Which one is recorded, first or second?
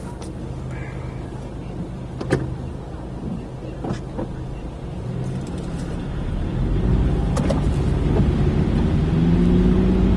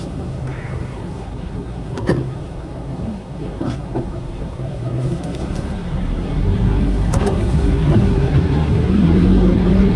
first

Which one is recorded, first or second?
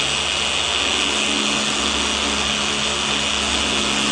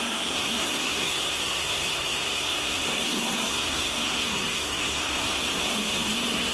first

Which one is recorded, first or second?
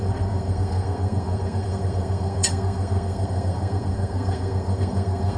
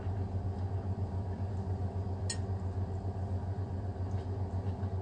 second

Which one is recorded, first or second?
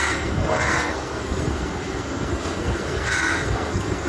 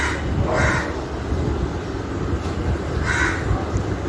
second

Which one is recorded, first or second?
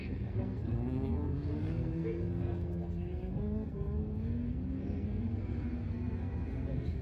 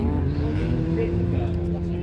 second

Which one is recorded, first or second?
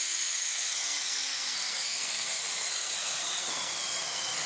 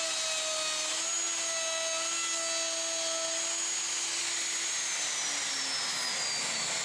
second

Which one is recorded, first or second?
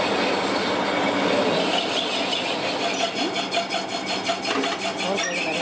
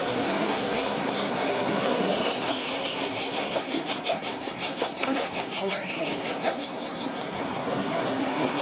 first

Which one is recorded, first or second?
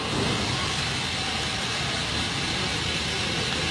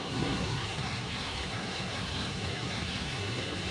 first